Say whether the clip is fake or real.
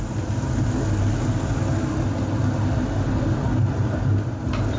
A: real